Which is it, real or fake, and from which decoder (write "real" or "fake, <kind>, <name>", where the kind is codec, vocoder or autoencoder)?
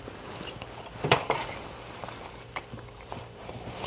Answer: fake, vocoder, BigVGAN v2